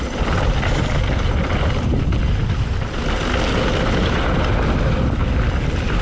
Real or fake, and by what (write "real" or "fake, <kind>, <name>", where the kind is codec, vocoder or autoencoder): real